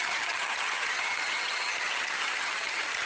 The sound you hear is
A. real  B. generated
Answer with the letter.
B